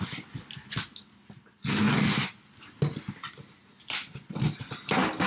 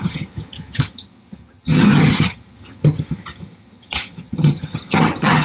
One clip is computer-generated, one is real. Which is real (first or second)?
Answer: first